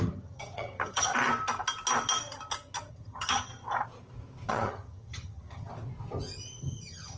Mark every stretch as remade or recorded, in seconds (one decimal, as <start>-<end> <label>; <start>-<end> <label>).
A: 0.0-1.1 remade; 1.1-2.9 recorded; 2.9-3.5 remade; 3.5-4.5 recorded; 4.5-5.7 remade; 5.7-6.6 recorded; 6.6-7.2 remade